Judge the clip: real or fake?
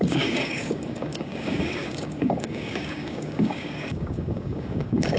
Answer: fake